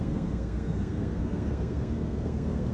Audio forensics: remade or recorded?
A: remade